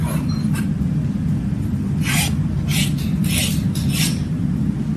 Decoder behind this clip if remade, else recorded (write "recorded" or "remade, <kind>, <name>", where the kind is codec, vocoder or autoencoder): recorded